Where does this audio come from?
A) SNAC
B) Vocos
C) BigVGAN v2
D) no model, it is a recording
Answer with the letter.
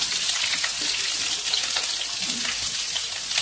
D